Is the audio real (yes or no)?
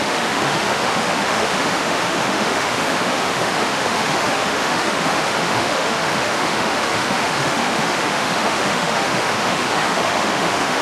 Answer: no